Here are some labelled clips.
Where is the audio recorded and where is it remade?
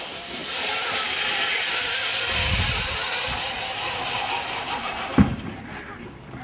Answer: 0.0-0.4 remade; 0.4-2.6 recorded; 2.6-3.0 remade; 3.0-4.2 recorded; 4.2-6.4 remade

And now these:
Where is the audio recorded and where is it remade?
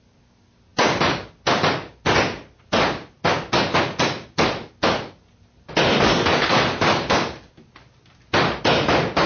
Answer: 0.0-9.3 recorded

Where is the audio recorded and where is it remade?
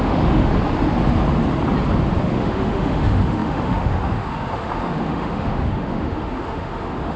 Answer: 0.0-0.5 remade; 0.5-2.2 recorded; 2.2-7.2 remade